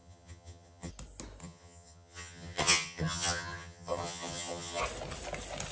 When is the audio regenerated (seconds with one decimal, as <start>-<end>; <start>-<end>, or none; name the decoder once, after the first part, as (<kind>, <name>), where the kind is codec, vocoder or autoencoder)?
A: 0.0-0.9 (vocoder, HiFi-GAN); 1.4-4.8